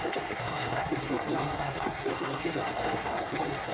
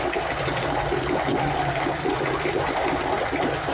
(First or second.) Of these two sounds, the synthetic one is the first